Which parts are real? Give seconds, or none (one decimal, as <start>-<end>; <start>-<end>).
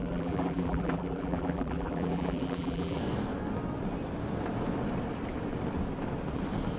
3.0-6.8